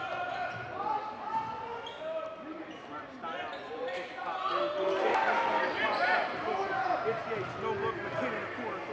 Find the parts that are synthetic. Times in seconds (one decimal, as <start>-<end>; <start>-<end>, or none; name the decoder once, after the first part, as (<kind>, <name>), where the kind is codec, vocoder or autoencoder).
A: 1.7-3.0 (vocoder, BigVGAN v2); 3.5-7.2